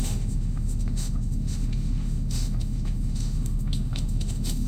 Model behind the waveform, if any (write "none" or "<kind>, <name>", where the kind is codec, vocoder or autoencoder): autoencoder, DAC-VAE